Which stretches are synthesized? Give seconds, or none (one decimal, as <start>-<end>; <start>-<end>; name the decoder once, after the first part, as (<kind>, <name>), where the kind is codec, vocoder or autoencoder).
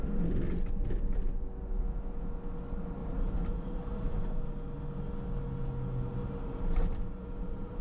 3.0-4.5 (vocoder, BigVGAN v2); 6.2-7.8